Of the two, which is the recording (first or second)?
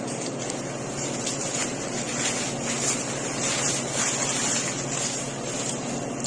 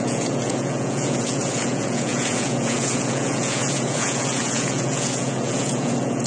first